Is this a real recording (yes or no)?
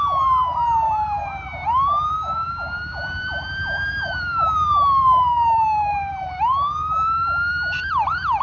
no